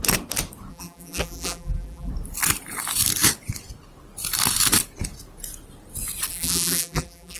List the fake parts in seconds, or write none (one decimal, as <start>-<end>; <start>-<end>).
0.7-2.1; 6.3-7.4